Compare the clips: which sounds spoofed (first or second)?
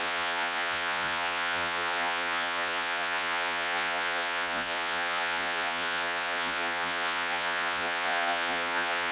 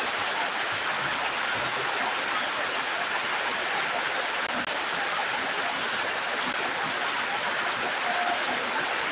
first